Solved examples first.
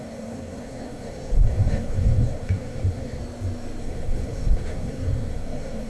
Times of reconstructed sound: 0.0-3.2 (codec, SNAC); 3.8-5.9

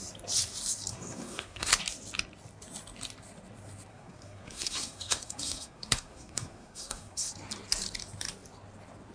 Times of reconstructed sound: 0.9-1.7 (codec, SNAC); 3.9-7.3

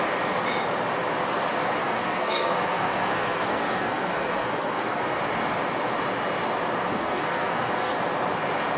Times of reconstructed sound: 1.8-5.2 (codec, SNAC); 6.9-7.9